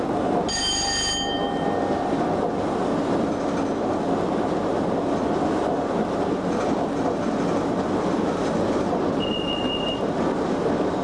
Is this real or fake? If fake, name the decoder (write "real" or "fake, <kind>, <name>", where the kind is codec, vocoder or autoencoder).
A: real